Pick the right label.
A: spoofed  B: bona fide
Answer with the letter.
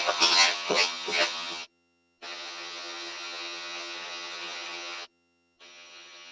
A